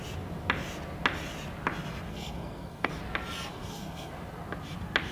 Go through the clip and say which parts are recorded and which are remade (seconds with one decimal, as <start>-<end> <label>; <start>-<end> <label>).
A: 0.0-2.1 recorded; 2.1-2.9 remade; 2.9-3.5 recorded; 3.5-4.1 remade; 4.1-5.1 recorded